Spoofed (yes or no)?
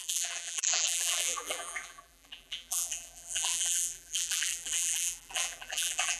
yes